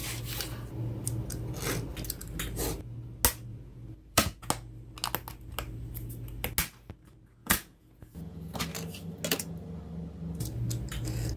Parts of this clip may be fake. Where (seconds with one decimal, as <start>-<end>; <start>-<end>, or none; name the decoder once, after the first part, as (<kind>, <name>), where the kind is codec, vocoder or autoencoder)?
3.5-4.5 (vocoder, Vocos); 7.4-8.6